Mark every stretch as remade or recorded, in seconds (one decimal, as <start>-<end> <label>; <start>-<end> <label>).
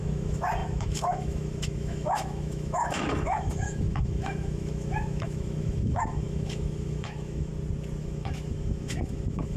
0.0-7.5 remade; 7.5-8.0 recorded; 8.0-9.6 remade